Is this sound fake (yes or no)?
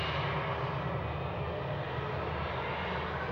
no